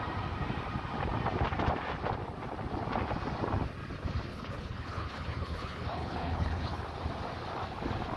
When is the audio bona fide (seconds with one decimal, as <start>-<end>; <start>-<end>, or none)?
0.0-4.3; 6.8-8.2